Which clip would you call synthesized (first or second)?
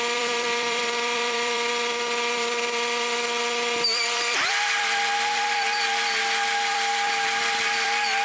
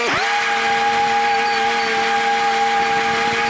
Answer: first